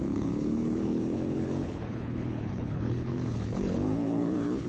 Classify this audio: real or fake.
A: fake